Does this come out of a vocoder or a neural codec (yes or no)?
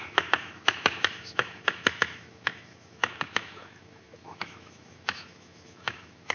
yes